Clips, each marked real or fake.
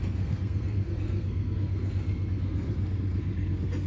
fake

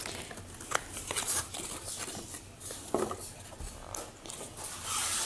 real